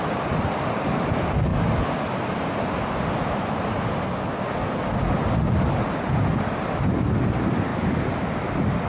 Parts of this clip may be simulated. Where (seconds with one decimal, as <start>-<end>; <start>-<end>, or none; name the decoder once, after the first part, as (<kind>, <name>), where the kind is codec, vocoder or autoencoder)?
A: 7.7-8.5 (vocoder, BigVGAN v2)